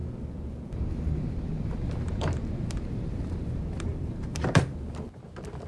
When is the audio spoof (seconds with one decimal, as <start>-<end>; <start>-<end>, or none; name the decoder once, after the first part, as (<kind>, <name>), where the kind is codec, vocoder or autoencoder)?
1.8-4.6 (vocoder, BigVGAN v2)